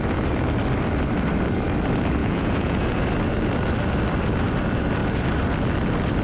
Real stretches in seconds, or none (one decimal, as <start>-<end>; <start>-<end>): 0.0-2.2; 3.0-6.2

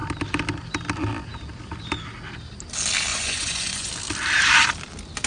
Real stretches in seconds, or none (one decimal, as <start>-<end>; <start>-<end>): 0.0-3.1; 3.9-5.3

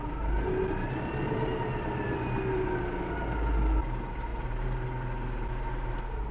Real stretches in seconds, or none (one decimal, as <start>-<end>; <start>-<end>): 0.0-6.3

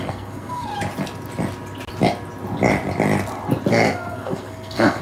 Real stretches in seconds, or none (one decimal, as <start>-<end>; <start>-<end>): 0.7-3.7

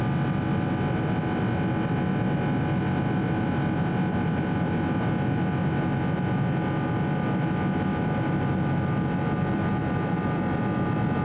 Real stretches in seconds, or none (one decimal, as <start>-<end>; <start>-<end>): 0.0-7.9